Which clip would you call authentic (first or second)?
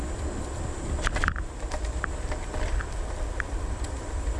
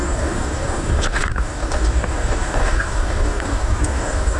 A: first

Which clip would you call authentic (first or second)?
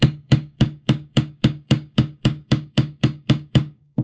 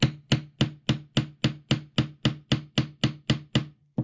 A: second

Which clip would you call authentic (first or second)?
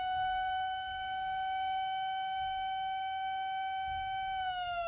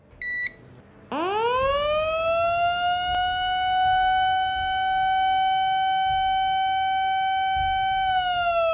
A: second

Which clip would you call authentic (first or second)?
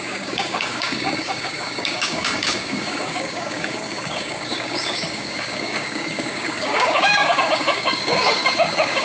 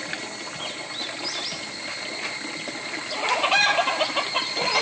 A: second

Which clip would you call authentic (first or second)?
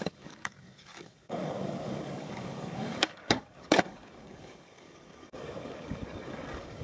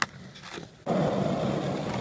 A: second